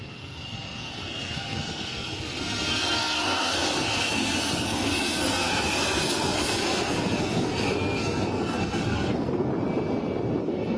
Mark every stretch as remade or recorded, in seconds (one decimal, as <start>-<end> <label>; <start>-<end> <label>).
0.0-9.5 remade; 9.5-10.4 recorded; 10.4-10.8 remade